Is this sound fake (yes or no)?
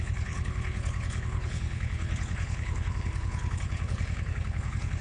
yes